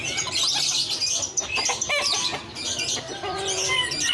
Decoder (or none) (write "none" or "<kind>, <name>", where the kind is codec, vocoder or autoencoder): none